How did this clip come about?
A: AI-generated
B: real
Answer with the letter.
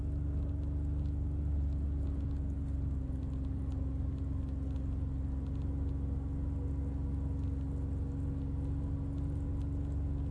B